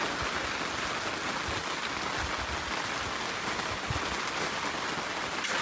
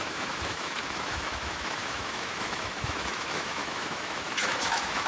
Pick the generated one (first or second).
second